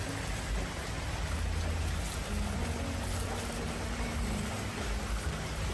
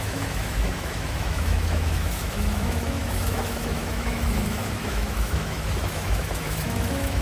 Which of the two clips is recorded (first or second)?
first